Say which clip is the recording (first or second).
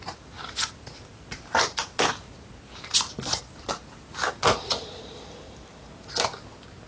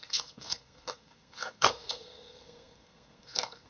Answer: first